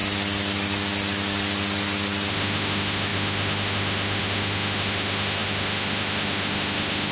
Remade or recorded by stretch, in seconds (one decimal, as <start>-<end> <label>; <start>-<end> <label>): 0.0-2.3 recorded; 2.3-7.1 remade